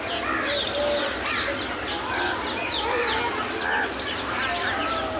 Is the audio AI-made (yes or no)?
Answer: no